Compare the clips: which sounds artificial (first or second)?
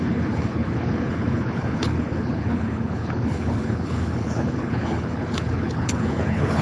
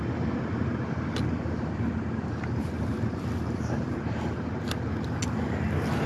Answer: first